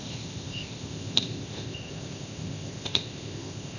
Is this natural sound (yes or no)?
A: no